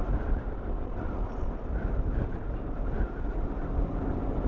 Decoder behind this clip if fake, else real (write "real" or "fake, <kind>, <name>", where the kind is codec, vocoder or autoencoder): real